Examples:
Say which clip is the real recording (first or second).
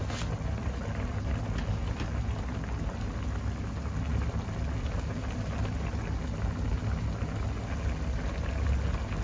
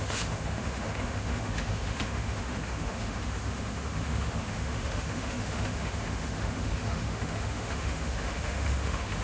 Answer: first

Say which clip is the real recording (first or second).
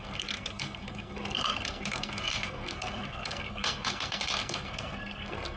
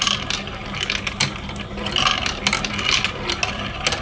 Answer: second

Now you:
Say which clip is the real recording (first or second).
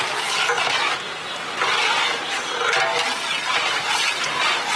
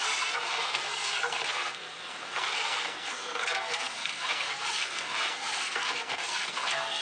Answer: first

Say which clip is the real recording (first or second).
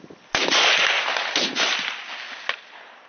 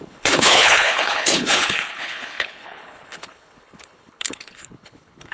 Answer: first